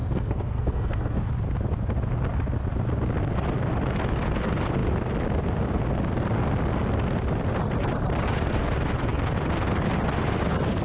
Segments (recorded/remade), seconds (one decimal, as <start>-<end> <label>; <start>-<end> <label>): 0.0-1.2 remade; 1.2-10.8 recorded